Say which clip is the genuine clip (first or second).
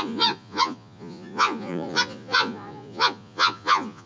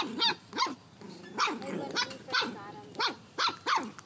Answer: second